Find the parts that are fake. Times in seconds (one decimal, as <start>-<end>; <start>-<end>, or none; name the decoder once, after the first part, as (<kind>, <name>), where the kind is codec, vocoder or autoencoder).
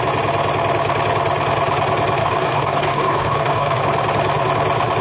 2.2-3.8 (codec, DAC)